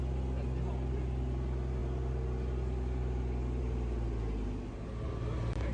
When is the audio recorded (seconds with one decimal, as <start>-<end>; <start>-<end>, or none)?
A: 0.0-5.7